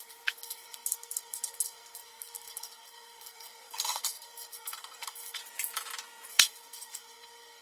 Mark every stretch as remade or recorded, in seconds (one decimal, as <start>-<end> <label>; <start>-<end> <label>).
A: 0.0-5.4 remade; 5.4-6.3 recorded; 6.3-7.6 remade